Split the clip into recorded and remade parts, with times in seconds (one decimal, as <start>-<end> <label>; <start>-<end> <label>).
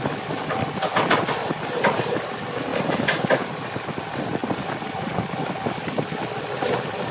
0.0-2.7 recorded; 2.7-3.5 remade; 3.5-7.1 recorded